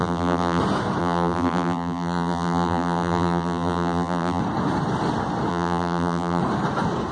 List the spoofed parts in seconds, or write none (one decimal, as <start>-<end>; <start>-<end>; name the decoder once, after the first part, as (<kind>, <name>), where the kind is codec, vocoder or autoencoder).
0.0-0.6 (vocoder, BigVGAN v2); 1.0-4.4; 5.5-6.4